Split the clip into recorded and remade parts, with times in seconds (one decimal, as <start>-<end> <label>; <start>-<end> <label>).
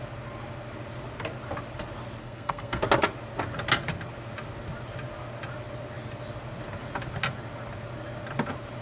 0.0-2.2 recorded; 2.2-2.8 remade; 2.8-8.8 recorded